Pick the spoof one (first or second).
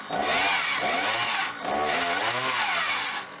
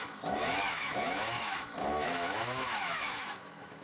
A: second